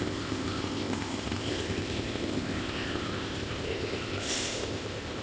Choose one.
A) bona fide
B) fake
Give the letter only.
B